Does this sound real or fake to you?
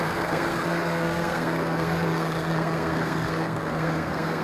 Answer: fake